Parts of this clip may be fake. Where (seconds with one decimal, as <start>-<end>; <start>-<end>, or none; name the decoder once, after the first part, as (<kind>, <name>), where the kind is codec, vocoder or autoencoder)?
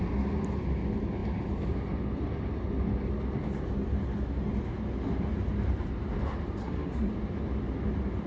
6.6-7.1 (codec, SNAC)